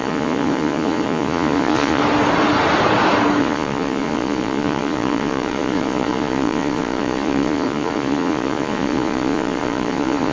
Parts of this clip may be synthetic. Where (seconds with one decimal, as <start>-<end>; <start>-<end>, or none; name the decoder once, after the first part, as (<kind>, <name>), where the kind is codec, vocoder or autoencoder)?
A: 0.0-2.0 (vocoder, Vocos); 3.4-10.3